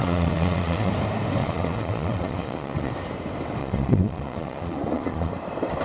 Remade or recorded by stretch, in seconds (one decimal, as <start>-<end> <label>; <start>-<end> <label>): 0.0-0.9 remade; 0.9-1.4 recorded; 1.4-2.9 remade; 2.9-3.6 recorded; 3.6-5.3 remade; 5.3-5.8 recorded